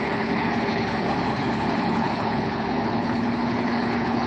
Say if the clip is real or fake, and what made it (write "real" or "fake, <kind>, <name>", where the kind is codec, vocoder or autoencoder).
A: fake, codec, HILCodec